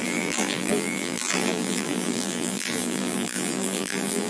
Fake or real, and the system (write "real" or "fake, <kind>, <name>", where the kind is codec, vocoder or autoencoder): fake, vocoder, BigVGAN v2